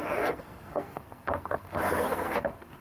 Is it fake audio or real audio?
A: fake